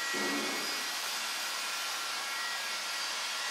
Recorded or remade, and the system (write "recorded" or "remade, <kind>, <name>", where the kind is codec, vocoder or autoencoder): recorded